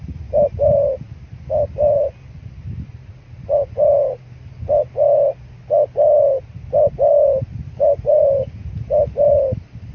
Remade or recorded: recorded